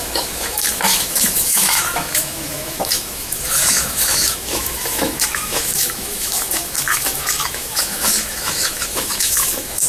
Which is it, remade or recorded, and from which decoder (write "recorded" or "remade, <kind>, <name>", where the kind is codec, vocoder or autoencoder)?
remade, autoencoder, DAC-VAE